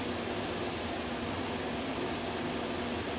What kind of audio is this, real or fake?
real